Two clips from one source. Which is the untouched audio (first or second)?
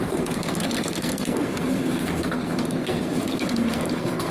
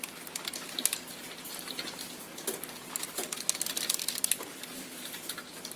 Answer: second